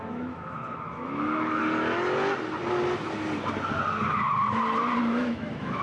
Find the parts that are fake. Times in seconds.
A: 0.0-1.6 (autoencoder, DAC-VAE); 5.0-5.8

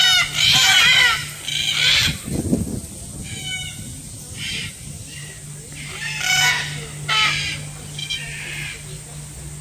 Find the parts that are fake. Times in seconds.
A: none

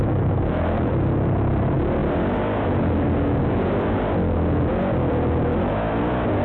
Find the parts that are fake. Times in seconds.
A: 0.0-0.9 (autoencoder, DAC-VAE); 5.5-6.0

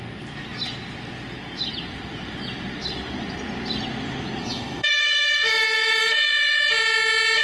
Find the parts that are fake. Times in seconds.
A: 4.4-6.6 (autoencoder, DAC-VAE)

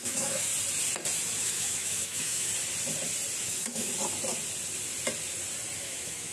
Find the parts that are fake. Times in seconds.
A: 0.0-0.5 (autoencoder, DAC-VAE); 1.4-2.5; 3.4-3.9; 5.8-6.3

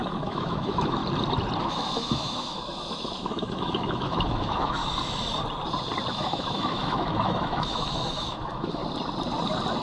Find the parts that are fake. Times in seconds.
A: 0.0-1.0 (autoencoder, DAC-VAE); 1.6-4.8; 6.1-8.8

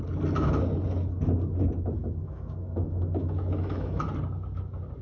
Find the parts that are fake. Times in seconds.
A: 2.0-4.0 (autoencoder, DAC-VAE)

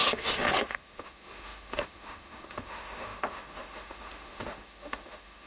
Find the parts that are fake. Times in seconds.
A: 0.0-5.5 (autoencoder, DAC-VAE)